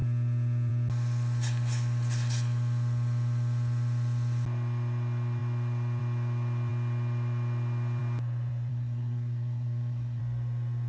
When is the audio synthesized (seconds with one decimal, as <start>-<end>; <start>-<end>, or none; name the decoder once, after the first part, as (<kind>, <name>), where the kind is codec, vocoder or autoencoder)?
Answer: 8.7-10.2 (codec, SNAC)